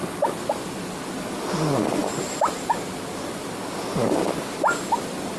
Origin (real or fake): real